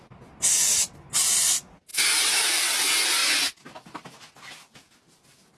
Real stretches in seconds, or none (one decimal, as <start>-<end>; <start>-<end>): 0.0-5.6